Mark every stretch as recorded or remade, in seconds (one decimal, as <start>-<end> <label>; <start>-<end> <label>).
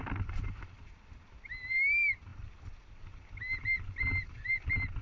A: 0.0-5.0 recorded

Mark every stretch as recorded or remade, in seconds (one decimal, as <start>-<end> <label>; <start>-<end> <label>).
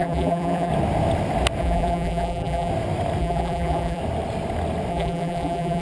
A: 0.0-0.7 remade; 0.7-1.6 recorded; 1.6-2.7 remade; 2.7-3.2 recorded; 3.2-4.0 remade; 4.0-4.9 recorded; 4.9-5.8 remade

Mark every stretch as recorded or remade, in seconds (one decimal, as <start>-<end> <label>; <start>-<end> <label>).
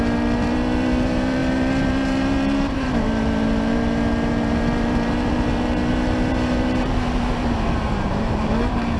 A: 0.0-9.0 remade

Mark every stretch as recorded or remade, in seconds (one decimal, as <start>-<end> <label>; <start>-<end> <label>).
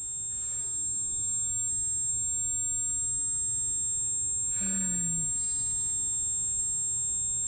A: 0.0-0.6 recorded; 0.6-1.7 remade; 1.7-7.5 recorded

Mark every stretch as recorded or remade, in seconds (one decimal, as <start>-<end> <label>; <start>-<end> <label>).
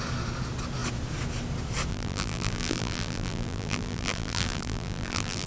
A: 0.0-1.9 recorded; 1.9-5.5 remade